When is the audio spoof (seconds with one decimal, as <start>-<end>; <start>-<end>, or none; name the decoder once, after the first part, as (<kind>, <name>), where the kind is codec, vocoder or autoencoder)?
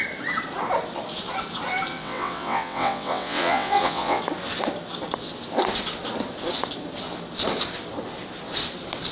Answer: 1.9-4.2 (vocoder, WaveNeXt)